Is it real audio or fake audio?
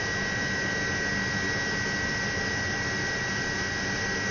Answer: real